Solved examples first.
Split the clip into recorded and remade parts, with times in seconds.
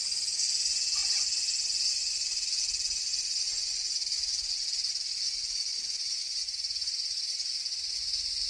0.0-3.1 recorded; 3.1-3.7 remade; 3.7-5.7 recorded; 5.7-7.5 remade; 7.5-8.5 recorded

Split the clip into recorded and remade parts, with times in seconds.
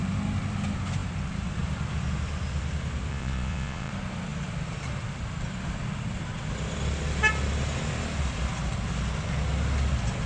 0.0-3.1 recorded; 3.1-3.9 remade; 3.9-10.3 recorded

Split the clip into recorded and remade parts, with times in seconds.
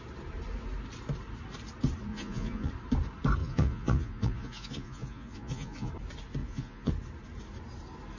0.0-2.1 recorded; 2.1-2.7 remade; 2.7-3.4 recorded; 3.4-5.9 remade; 5.9-6.4 recorded; 6.4-6.9 remade; 6.9-8.2 recorded